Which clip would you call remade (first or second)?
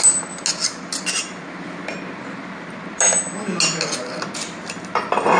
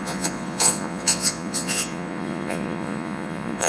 second